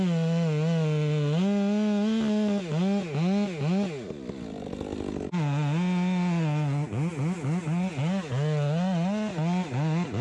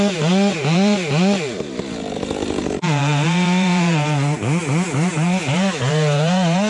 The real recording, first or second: first